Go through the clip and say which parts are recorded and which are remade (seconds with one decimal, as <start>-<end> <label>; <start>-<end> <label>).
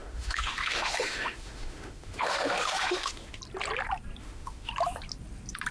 0.0-3.4 remade; 3.4-4.2 recorded; 4.2-4.7 remade; 4.7-5.7 recorded